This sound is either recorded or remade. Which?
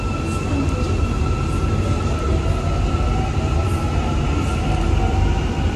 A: recorded